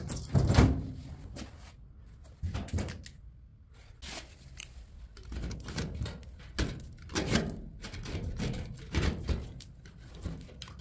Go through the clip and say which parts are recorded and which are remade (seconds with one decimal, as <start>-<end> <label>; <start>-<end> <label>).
0.0-10.8 recorded